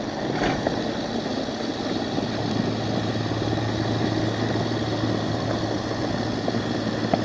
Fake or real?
real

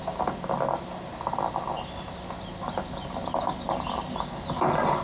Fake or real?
real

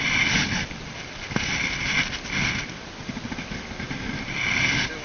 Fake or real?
real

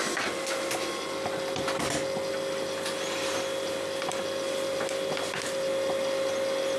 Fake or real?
real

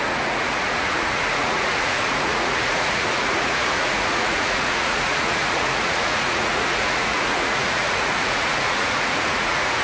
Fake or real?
fake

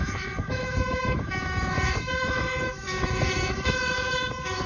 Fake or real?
fake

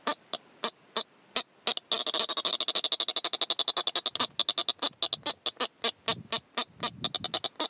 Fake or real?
real